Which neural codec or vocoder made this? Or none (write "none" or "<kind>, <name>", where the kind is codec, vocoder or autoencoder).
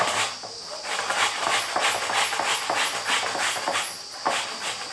none